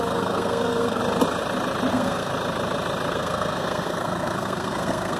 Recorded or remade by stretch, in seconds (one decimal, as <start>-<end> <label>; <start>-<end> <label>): 0.0-1.0 remade; 1.0-1.9 recorded; 1.9-2.3 remade; 2.3-3.1 recorded; 3.1-5.2 remade